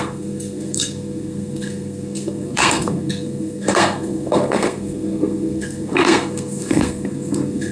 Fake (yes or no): yes